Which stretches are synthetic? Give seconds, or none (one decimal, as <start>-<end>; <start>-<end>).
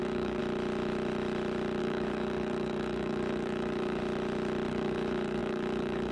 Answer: 0.0-0.4; 1.8-4.0; 4.7-6.1